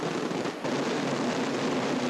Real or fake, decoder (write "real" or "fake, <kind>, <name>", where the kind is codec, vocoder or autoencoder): real